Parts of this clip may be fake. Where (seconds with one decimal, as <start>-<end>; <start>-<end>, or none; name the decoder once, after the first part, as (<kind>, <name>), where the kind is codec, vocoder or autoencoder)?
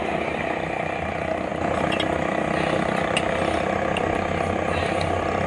none